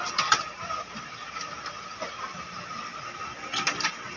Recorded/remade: recorded